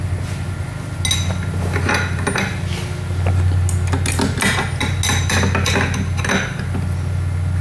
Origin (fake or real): real